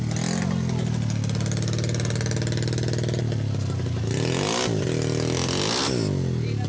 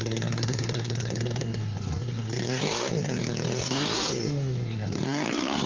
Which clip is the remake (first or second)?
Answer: second